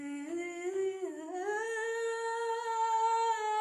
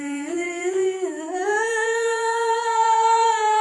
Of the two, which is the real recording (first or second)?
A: first